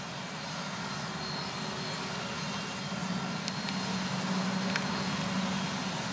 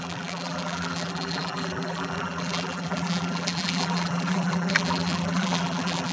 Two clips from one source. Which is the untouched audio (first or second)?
first